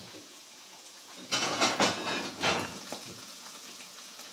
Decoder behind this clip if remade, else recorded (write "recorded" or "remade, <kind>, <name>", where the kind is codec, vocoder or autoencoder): remade, vocoder, Vocos